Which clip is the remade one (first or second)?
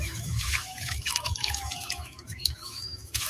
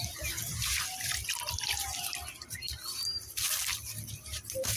first